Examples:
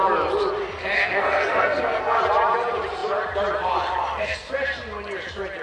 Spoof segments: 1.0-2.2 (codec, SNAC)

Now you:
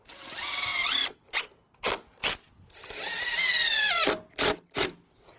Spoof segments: none

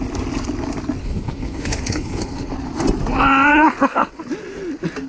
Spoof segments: 1.0-2.5 (codec, HILCodec); 3.5-4.2

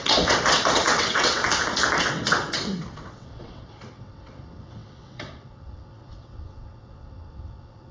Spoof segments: 0.0-1.4 (vocoder, WaveNeXt); 2.0-7.9